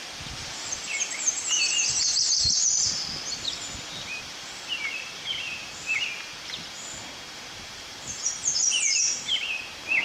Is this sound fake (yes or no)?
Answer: yes